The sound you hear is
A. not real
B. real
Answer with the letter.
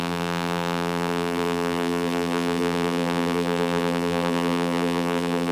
A